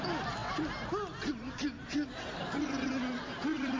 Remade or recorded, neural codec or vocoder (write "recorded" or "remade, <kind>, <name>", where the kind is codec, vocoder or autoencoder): recorded